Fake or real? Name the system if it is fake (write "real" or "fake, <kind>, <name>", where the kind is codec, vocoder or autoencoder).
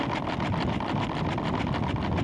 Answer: real